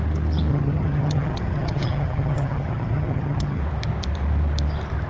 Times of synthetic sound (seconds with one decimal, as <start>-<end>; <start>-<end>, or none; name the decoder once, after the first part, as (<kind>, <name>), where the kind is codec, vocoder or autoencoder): 0.5-3.6 (vocoder, HiFi-GAN)